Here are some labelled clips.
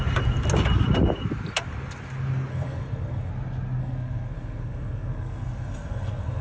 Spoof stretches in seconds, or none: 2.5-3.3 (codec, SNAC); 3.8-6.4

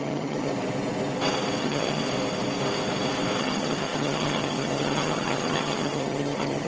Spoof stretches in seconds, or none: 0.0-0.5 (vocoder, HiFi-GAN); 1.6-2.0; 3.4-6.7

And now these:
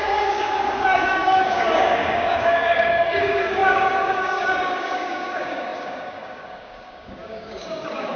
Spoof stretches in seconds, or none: 0.0-8.2 (codec, DAC)

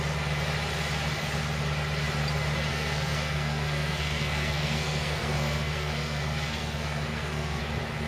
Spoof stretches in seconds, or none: 2.7-7.6 (codec, SNAC)